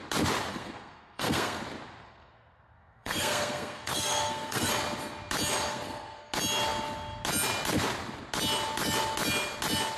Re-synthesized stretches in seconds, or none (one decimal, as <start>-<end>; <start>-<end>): 0.5-1.6; 2.0-4.7; 5.7-6.3